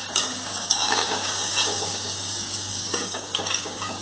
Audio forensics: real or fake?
fake